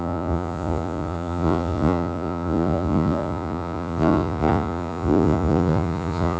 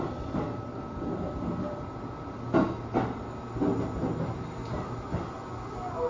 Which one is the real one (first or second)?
second